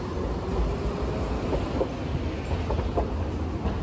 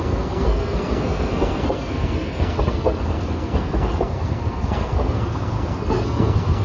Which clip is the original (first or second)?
first